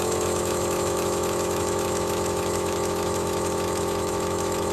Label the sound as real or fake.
fake